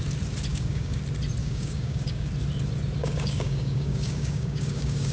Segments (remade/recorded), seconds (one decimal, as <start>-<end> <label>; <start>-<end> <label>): 0.0-0.5 recorded; 0.5-1.0 remade; 1.0-1.4 recorded; 1.4-2.3 remade; 2.3-3.0 recorded; 3.0-5.1 remade